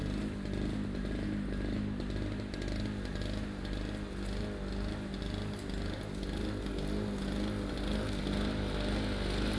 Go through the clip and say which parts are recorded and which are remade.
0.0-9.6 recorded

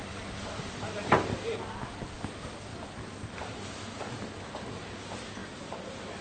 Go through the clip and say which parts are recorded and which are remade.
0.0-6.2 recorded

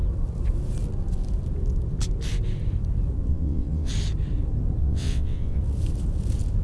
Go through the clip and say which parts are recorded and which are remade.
0.0-3.3 recorded; 3.3-3.9 remade; 3.9-4.8 recorded; 4.8-5.6 remade; 5.6-6.6 recorded

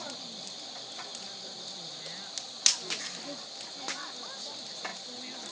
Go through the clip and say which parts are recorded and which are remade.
0.0-5.5 recorded

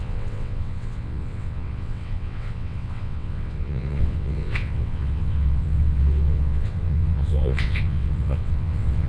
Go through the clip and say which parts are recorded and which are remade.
0.0-9.1 remade